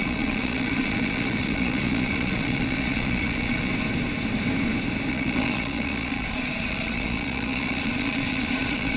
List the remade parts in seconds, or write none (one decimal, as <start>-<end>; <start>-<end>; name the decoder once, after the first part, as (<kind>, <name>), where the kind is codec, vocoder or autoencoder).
0.0-3.7 (vocoder, Vocos); 5.1-9.0